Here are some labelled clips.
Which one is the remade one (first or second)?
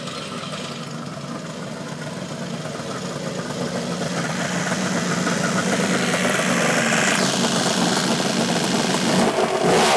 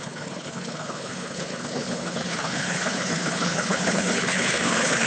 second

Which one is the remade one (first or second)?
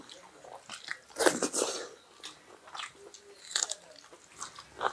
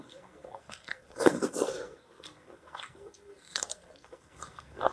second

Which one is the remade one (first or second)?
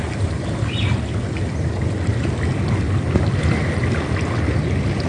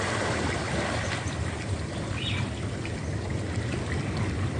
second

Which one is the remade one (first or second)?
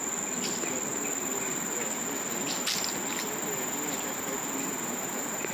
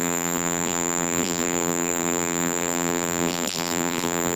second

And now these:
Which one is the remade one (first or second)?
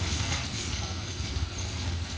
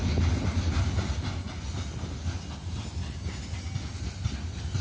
first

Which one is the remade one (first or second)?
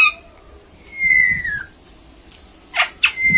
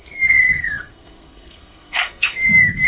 second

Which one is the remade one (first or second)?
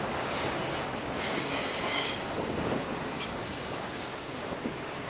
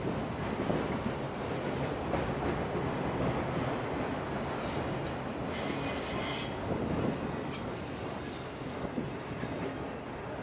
first